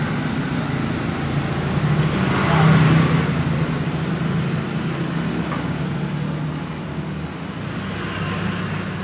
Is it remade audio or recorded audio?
recorded